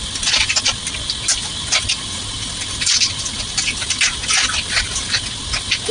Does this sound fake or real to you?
real